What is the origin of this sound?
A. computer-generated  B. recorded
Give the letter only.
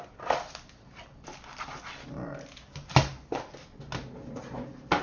B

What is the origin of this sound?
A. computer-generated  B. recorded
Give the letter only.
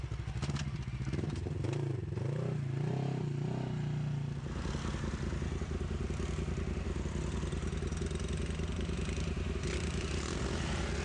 B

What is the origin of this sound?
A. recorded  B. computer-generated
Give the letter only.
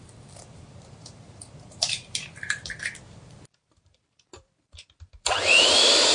B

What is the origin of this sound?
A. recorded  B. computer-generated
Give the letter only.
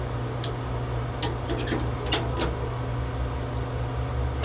A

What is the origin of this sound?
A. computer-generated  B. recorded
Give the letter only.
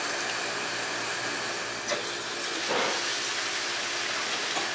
B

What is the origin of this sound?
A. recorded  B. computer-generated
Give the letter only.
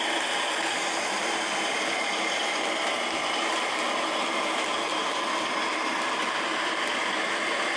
A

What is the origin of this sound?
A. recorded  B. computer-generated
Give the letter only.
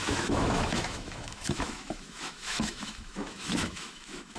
B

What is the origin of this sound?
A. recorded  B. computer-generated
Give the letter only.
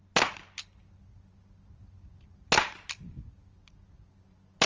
A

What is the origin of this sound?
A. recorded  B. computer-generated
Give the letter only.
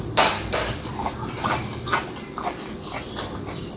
A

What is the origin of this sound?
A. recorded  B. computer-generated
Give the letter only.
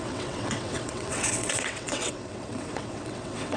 B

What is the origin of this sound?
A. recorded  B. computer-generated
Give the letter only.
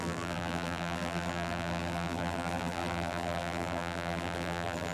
B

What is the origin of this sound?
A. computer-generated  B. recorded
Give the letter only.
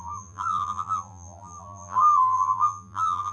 A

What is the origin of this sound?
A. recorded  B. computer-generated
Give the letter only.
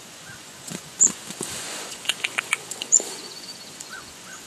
B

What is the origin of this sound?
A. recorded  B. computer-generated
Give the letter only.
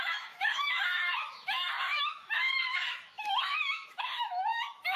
B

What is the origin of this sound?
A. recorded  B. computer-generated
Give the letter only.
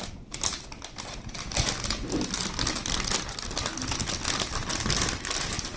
A